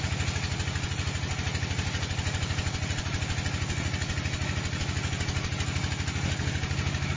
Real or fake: real